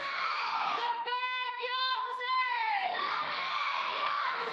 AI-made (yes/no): yes